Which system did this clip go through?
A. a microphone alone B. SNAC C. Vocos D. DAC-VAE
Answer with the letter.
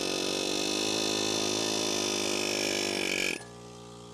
A